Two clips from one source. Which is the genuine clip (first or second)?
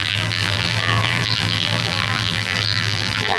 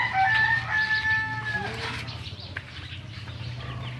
second